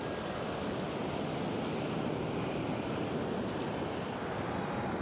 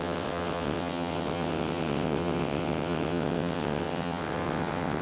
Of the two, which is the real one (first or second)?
first